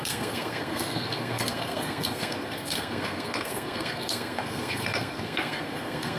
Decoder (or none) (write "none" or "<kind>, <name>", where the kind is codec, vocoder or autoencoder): codec, SNAC